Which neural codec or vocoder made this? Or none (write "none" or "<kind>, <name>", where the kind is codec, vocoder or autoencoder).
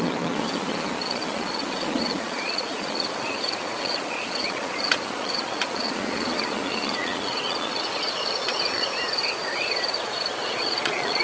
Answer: vocoder, Vocos